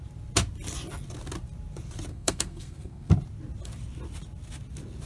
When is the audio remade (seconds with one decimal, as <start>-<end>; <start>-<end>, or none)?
2.1-3.1